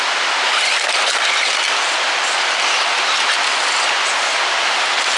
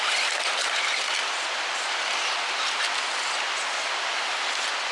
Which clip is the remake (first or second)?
second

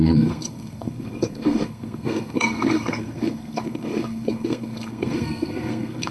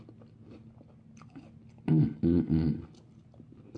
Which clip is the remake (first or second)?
first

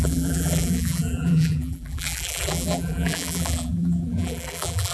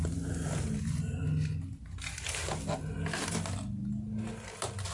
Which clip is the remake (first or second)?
first